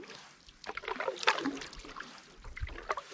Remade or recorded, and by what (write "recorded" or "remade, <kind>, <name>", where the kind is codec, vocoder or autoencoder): recorded